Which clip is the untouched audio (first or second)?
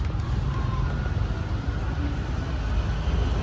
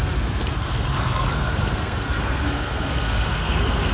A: first